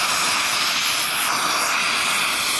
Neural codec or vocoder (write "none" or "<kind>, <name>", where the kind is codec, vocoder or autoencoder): none